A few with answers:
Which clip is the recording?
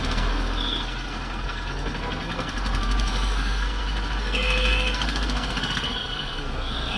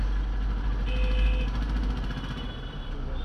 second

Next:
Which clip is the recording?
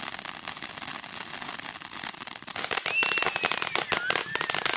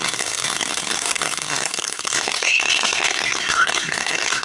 first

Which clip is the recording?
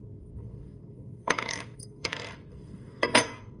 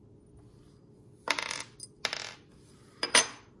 second